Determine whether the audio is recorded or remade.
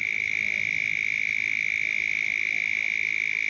recorded